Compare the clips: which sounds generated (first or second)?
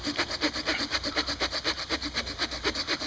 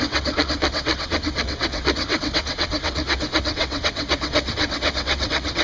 second